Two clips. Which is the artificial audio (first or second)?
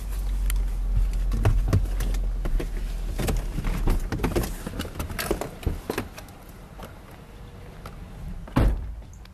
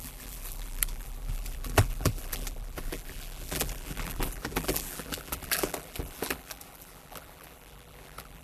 second